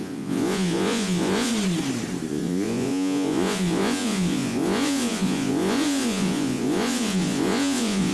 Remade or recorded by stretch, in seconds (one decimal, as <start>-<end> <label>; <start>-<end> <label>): 0.0-1.5 remade; 1.5-2.3 recorded; 2.3-8.1 remade

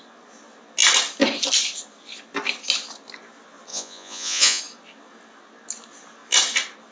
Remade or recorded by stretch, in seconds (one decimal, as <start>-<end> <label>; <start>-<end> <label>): 0.0-3.7 recorded; 3.7-4.6 remade; 4.6-6.9 recorded

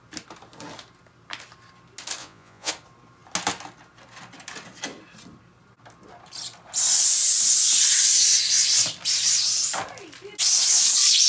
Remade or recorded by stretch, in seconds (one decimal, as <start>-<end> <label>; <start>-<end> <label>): 0.0-2.2 recorded; 2.2-2.7 remade; 2.7-11.3 recorded

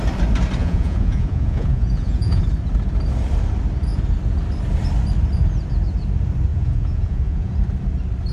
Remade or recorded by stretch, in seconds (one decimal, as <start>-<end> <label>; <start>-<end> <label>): 0.0-0.6 recorded; 0.6-2.4 remade; 2.4-6.5 recorded; 6.5-7.5 remade; 7.5-8.3 recorded